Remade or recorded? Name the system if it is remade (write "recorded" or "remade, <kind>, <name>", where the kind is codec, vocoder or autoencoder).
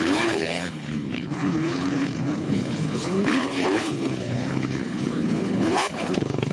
remade, codec, HILCodec